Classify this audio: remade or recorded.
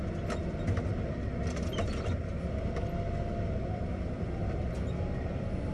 recorded